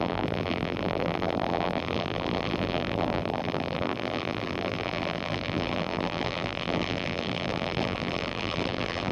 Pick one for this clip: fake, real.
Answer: fake